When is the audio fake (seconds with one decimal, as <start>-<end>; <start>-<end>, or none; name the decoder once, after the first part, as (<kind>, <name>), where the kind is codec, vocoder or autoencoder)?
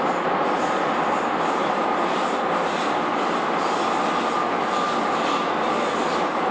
none